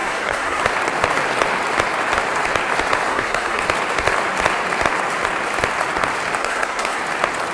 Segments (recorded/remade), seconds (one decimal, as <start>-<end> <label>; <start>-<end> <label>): 0.0-0.6 remade; 0.6-3.1 recorded; 3.1-3.6 remade; 3.6-6.4 recorded; 6.4-7.0 remade; 7.0-7.5 recorded